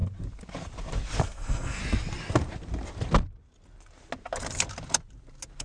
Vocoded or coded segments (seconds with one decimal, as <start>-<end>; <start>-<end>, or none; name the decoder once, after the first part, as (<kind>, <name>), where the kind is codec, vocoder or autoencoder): 1.2-1.8 (codec, SNAC)